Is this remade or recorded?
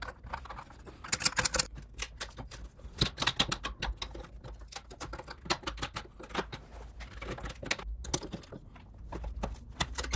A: recorded